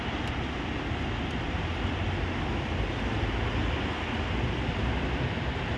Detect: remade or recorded recorded